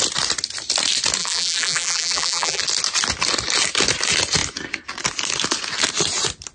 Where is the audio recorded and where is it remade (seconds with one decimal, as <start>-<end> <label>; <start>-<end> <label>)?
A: 0.0-1.2 recorded; 1.2-2.6 remade; 2.6-6.5 recorded